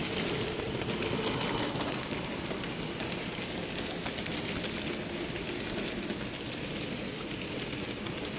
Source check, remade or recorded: recorded